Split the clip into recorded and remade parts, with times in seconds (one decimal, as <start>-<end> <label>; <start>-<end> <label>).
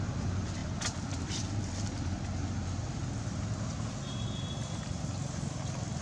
0.0-6.0 recorded